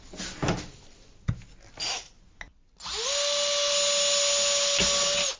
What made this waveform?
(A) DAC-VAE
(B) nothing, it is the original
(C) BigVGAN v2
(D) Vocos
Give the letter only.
B